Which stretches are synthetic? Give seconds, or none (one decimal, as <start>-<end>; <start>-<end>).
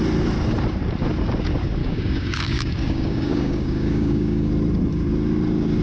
1.8-4.5